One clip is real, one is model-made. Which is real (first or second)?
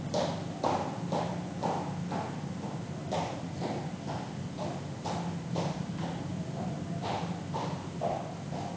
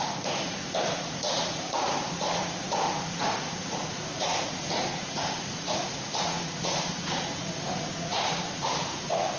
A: first